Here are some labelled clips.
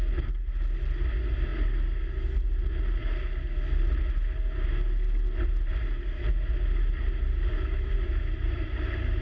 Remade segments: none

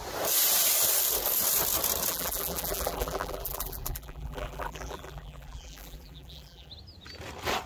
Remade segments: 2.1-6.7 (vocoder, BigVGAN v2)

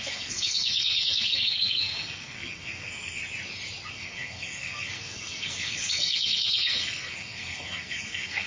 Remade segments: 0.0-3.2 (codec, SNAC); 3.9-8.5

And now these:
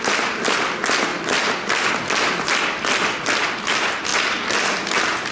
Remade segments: none

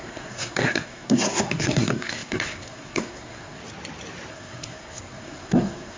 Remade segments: 0.0-3.6 (codec, SNAC); 4.3-6.0